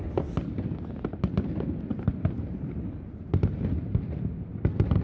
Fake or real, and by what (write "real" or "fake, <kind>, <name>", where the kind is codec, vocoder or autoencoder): real